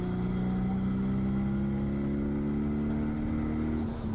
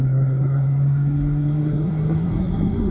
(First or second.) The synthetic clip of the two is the second